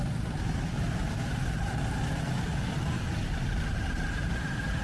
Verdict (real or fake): fake